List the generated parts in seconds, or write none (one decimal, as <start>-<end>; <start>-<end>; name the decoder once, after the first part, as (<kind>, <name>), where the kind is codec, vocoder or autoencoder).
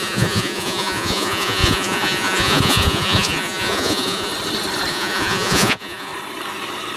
0.0-4.3 (vocoder, Vocos); 4.9-6.1